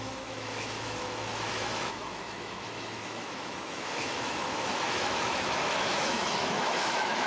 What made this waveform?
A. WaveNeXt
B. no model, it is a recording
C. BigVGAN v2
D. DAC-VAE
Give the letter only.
D